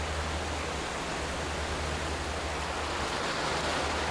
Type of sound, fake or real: real